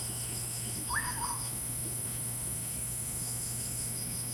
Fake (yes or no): yes